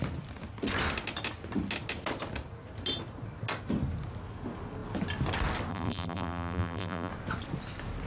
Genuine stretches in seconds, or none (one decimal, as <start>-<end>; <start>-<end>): 0.0-5.7; 7.1-8.1